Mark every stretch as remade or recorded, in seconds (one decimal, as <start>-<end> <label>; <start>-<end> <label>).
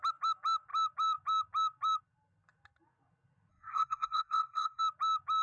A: 0.0-3.5 recorded; 3.5-4.8 remade; 4.8-5.4 recorded